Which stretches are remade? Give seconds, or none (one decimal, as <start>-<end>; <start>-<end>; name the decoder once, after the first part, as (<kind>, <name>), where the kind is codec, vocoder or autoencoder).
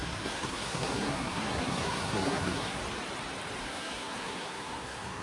0.0-2.8 (codec, SNAC); 3.6-5.2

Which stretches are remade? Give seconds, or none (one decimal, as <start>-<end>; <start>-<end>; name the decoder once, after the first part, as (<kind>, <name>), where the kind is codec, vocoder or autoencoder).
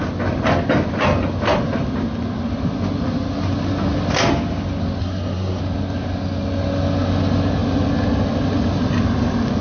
5.0-5.6 (codec, SNAC)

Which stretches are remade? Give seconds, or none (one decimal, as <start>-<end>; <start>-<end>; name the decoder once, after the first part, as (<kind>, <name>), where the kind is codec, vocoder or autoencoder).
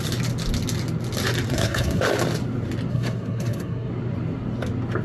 1.5-2.0 (codec, SNAC); 2.9-3.9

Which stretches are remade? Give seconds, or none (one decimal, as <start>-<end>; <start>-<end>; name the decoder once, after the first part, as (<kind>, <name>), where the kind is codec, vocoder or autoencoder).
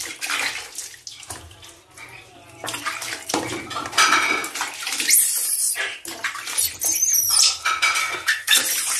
8.0-8.6 (codec, SNAC)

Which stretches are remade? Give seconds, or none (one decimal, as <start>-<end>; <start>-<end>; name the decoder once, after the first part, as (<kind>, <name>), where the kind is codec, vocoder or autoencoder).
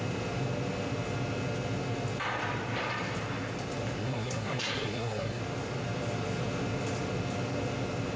4.0-5.4 (codec, SNAC)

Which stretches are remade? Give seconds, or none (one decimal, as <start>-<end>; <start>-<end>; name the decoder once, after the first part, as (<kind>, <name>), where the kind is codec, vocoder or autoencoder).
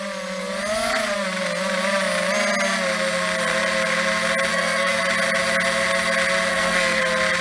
4.5-5.0 (codec, SNAC); 6.5-7.0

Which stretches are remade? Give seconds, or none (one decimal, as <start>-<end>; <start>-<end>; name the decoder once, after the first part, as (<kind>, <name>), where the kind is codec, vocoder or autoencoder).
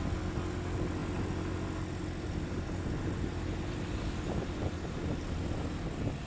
none